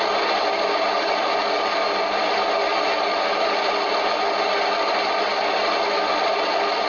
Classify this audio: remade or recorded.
recorded